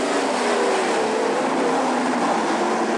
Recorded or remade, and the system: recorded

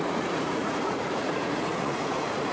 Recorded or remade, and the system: remade, vocoder, Vocos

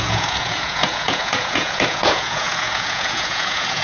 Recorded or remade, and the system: remade, vocoder, Vocos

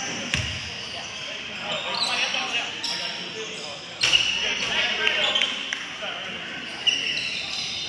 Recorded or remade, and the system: recorded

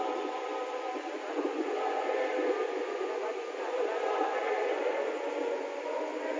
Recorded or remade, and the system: remade, vocoder, Vocos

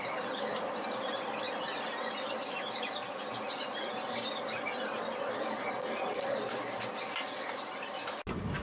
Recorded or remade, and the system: recorded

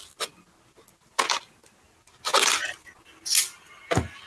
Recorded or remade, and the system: recorded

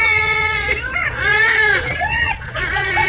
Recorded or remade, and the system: remade, vocoder, Vocos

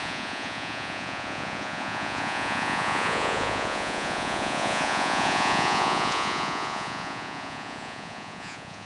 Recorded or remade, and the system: remade, vocoder, Vocos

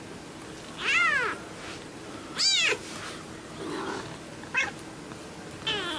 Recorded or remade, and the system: recorded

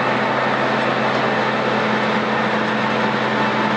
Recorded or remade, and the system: recorded